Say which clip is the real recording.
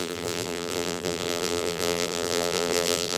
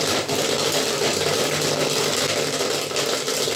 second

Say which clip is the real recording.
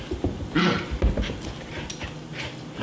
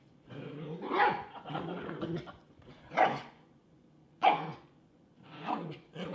first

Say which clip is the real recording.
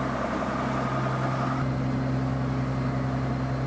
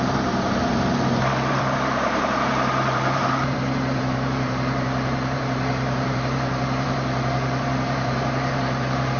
first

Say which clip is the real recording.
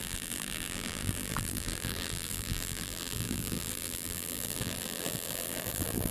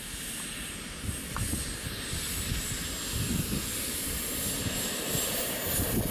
second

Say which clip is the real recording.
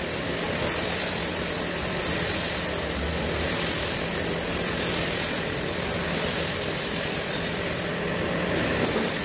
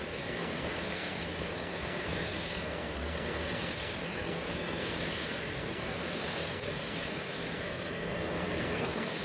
first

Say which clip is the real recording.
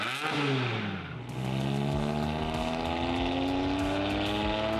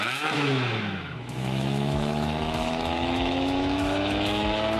first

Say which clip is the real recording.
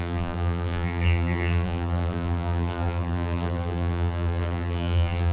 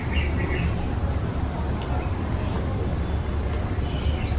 second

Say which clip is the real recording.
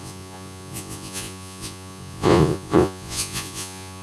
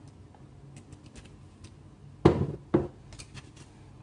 second